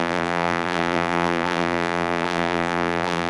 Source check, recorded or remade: remade